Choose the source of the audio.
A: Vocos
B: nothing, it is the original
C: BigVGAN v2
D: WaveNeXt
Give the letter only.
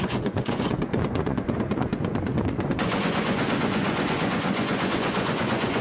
A